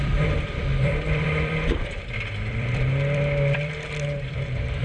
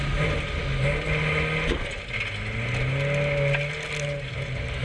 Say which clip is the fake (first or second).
first